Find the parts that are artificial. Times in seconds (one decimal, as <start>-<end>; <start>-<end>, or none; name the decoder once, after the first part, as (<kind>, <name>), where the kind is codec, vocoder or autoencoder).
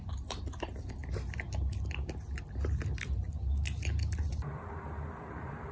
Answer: 0.0-1.0 (vocoder, BigVGAN v2); 4.4-5.7